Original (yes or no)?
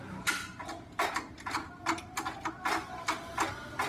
yes